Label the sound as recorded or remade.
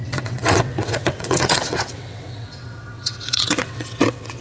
remade